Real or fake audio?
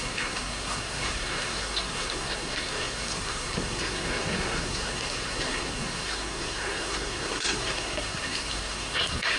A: fake